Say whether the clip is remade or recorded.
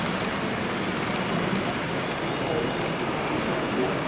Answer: recorded